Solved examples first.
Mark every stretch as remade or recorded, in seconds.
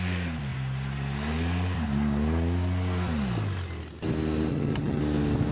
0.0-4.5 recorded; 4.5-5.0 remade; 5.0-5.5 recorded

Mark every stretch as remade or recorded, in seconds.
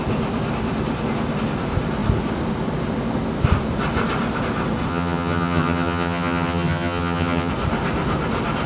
0.0-4.9 recorded; 4.9-7.5 remade; 7.5-8.7 recorded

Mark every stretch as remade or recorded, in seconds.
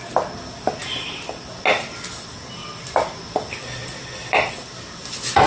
0.0-5.5 recorded